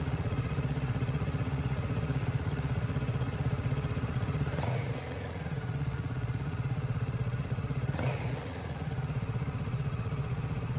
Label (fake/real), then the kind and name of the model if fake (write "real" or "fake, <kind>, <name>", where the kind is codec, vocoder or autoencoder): fake, vocoder, Vocos